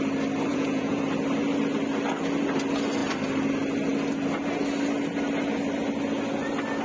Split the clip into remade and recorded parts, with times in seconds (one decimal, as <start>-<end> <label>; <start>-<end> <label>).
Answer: 0.0-0.5 recorded; 0.5-1.0 remade; 1.0-6.8 recorded